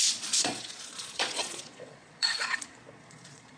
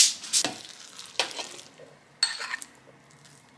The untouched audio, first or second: second